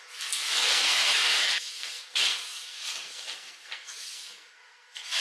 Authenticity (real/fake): fake